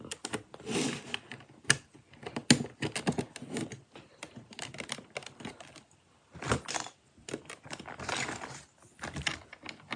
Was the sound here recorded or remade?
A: recorded